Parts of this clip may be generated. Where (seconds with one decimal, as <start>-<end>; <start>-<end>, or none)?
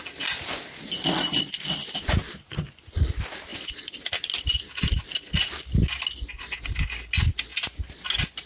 none